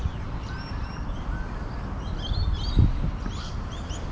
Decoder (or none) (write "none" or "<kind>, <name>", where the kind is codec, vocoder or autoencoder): none